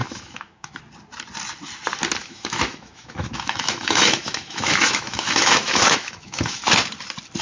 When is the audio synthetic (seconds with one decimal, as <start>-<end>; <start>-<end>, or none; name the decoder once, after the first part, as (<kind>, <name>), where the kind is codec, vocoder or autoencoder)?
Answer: 0.0-0.8 (autoencoder, DAC-VAE); 2.2-6.6